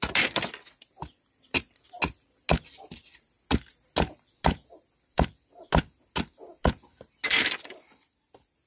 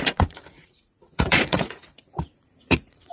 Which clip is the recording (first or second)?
first